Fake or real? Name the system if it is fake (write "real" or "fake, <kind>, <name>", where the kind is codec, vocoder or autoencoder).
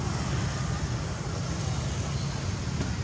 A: real